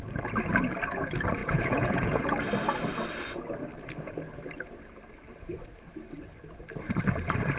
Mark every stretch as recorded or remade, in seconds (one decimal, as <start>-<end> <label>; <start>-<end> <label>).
0.0-1.4 recorded; 1.4-2.2 remade; 2.2-7.6 recorded